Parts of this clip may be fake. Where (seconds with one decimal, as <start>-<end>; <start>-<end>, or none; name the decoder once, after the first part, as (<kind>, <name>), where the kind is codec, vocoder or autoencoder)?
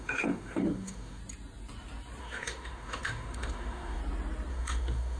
0.0-1.2 (autoencoder, DAC-VAE); 2.2-4.0; 4.5-5.2